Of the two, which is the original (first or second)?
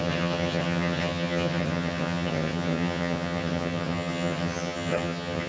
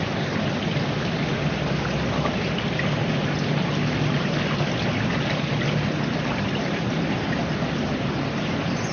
second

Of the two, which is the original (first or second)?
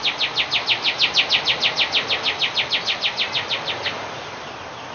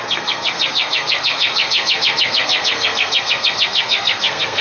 first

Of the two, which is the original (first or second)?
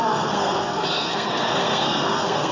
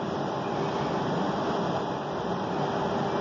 second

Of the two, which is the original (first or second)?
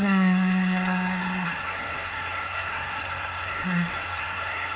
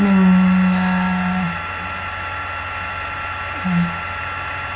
second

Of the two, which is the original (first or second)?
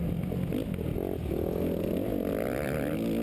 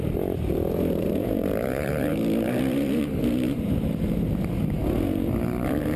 first